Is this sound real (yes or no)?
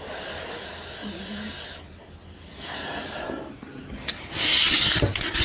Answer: yes